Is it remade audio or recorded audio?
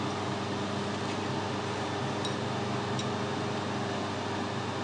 recorded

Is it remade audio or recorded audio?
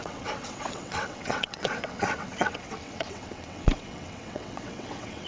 remade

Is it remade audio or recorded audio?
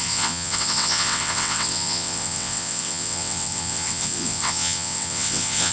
remade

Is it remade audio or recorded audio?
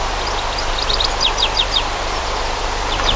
remade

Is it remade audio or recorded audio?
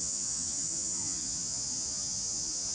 remade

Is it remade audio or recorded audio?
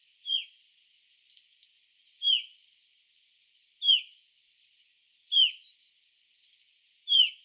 recorded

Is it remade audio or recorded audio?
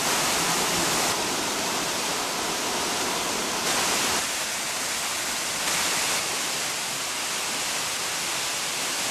recorded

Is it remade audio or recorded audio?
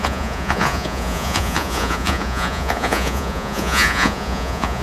remade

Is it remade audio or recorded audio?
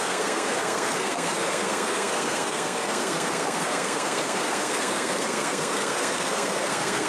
remade